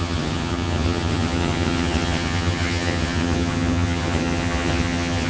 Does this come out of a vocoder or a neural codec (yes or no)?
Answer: yes